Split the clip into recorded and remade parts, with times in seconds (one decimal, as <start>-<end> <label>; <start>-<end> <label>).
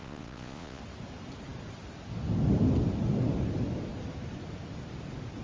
0.0-0.8 remade; 0.8-5.4 recorded